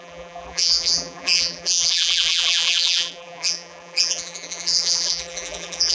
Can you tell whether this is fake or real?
fake